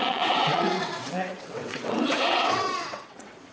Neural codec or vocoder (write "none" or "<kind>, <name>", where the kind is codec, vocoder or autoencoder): vocoder, WaveNeXt